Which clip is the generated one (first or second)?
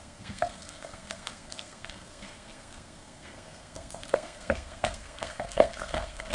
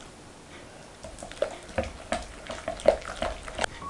first